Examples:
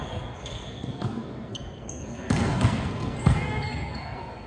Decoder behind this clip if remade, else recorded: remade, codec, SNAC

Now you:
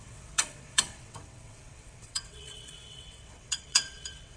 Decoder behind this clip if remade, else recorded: remade, vocoder, WaveNeXt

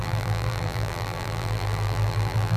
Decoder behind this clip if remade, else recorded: remade, vocoder, BigVGAN v2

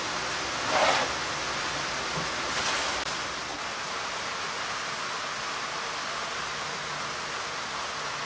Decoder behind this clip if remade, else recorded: recorded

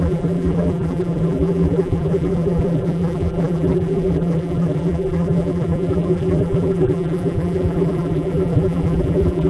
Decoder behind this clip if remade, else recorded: remade, vocoder, BigVGAN v2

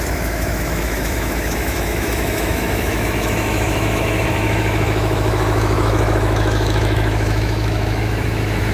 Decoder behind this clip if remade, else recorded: remade, autoencoder, DAC-VAE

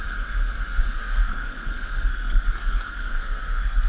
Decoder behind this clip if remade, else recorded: remade, codec, SNAC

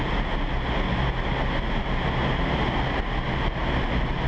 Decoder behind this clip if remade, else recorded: recorded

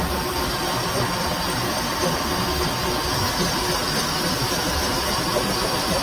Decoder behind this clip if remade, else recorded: recorded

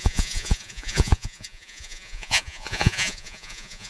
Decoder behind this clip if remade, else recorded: remade, vocoder, Vocos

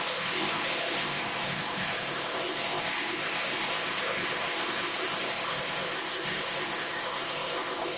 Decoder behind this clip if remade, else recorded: remade, codec, ZipCodec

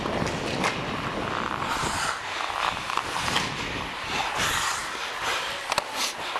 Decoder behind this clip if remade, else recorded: recorded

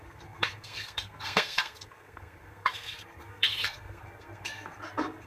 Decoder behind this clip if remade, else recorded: remade, codec, SNAC